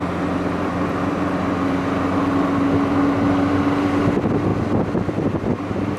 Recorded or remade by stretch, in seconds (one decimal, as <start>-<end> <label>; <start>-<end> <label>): 0.0-6.0 recorded